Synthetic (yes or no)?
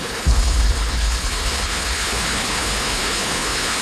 yes